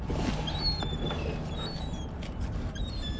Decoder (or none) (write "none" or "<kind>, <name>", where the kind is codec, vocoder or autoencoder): none